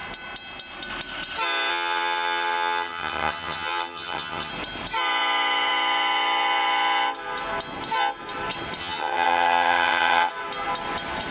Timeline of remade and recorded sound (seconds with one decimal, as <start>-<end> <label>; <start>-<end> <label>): 0.0-1.7 recorded; 1.7-4.5 remade; 4.5-8.8 recorded; 8.8-10.3 remade; 10.3-11.3 recorded